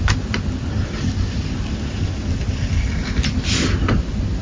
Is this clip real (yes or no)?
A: yes